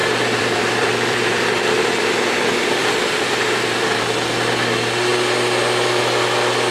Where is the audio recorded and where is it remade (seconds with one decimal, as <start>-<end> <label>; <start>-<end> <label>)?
0.0-4.0 remade; 4.0-6.7 recorded